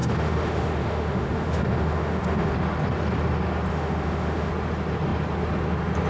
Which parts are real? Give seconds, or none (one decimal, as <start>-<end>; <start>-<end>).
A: 2.5-3.7; 4.5-6.1